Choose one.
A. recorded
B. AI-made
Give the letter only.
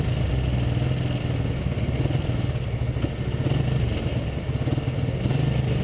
A